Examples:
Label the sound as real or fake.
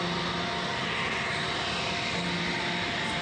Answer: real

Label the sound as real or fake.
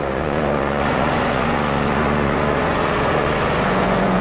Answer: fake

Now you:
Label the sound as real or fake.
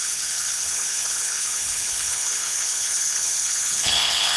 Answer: fake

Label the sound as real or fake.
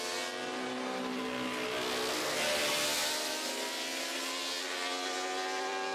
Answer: real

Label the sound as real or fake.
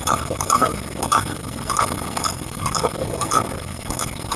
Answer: fake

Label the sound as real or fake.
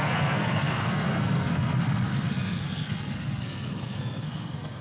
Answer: fake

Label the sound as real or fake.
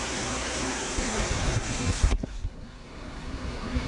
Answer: fake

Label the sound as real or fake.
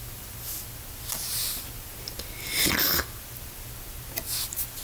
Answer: real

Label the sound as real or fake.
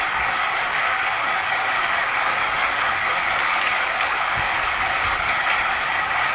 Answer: fake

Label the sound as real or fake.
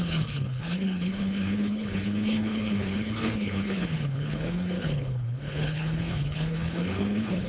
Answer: fake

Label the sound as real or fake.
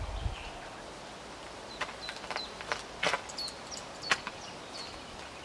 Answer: real